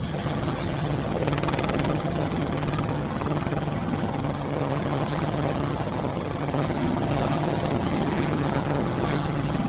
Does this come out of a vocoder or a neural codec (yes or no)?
yes